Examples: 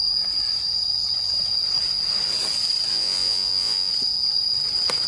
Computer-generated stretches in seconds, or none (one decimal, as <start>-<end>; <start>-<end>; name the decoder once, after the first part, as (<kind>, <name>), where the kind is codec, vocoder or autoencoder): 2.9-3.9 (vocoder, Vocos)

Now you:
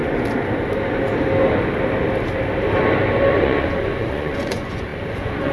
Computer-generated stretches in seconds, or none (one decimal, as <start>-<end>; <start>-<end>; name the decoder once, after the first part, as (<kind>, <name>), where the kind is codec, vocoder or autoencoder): 3.3-5.5 (vocoder, Vocos)

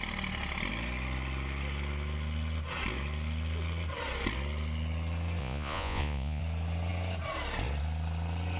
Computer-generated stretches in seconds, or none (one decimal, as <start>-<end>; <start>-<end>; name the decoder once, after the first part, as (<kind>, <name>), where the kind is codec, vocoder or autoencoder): 5.4-6.4 (vocoder, Vocos)

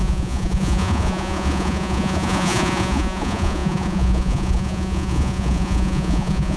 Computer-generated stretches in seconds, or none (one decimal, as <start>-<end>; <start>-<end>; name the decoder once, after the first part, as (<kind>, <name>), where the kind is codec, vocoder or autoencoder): 0.0-6.6 (vocoder, Vocos)

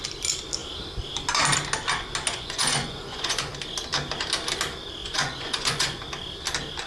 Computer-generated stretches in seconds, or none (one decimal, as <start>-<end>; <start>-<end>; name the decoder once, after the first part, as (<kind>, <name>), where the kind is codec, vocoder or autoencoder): 2.3-3.5 (vocoder, Vocos); 5.0-6.0

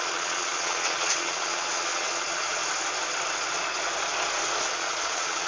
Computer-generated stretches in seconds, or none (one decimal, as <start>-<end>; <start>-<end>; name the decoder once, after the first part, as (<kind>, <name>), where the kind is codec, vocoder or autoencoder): 0.0-2.6 (vocoder, Vocos); 4.7-5.5